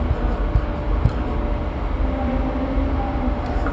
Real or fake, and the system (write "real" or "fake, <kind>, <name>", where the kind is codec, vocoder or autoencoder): real